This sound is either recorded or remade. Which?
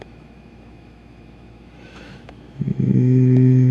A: remade